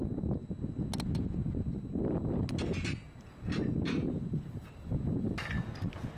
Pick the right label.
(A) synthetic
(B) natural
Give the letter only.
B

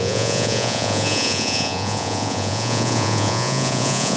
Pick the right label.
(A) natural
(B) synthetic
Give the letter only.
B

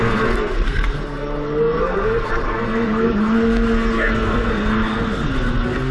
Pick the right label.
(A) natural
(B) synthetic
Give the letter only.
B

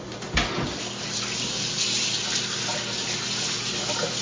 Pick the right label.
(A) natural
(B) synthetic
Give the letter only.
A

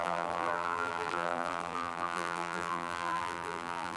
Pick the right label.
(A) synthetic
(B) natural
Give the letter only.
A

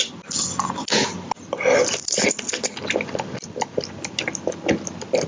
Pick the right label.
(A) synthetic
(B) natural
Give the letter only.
B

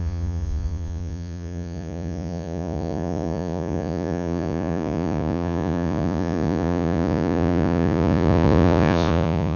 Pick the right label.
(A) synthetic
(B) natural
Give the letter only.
A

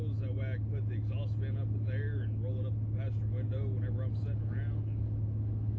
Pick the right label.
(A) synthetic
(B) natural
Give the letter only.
B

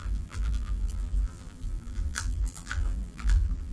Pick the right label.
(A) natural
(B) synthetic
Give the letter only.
B